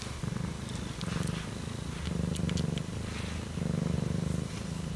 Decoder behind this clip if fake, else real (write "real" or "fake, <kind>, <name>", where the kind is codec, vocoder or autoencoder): real